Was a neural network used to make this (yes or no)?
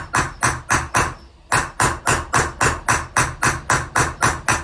no